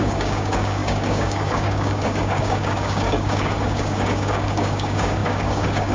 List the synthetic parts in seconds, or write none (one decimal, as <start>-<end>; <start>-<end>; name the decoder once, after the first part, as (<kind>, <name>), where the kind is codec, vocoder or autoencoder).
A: 0.0-5.9 (codec, DAC)